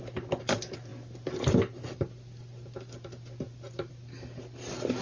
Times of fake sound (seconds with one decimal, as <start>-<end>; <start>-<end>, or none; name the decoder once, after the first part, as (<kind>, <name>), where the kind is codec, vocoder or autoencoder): none